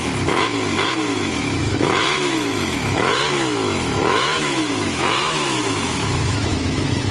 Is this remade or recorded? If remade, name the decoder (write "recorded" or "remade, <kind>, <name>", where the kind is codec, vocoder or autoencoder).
remade, autoencoder, DAC-VAE